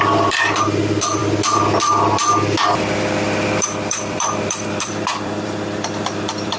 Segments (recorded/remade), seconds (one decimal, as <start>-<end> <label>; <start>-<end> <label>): 0.0-1.2 remade; 1.2-1.8 recorded; 1.8-2.2 remade; 2.2-2.8 recorded; 2.8-6.6 remade